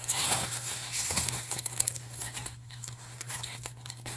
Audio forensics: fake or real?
fake